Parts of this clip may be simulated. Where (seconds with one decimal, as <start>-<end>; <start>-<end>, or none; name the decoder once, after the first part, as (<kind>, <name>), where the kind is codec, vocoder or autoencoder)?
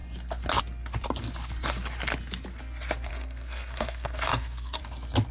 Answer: 3.1-4.8 (codec, SNAC)